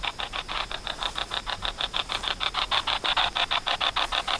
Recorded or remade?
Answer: recorded